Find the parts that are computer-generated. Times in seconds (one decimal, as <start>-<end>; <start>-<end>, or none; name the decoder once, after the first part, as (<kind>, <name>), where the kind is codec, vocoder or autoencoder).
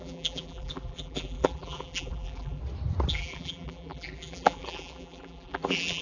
0.0-2.6 (vocoder, BigVGAN v2); 3.1-6.0